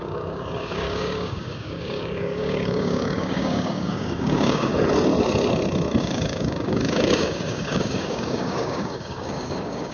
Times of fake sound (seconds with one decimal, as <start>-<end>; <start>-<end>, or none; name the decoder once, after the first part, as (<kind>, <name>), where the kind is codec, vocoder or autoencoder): 0.0-4.7 (codec, DAC); 6.0-9.9